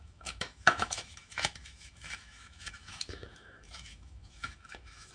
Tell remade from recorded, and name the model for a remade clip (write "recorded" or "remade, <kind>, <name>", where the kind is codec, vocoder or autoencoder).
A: remade, autoencoder, DAC-VAE